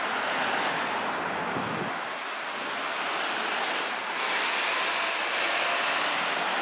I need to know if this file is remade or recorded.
recorded